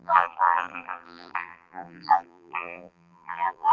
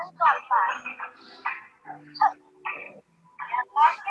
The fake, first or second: first